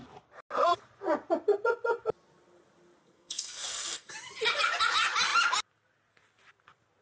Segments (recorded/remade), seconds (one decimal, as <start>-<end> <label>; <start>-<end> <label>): 0.0-3.0 recorded; 3.0-4.1 remade; 4.1-7.0 recorded